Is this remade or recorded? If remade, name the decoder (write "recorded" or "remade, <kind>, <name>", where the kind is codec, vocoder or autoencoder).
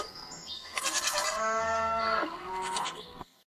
remade, codec, SNAC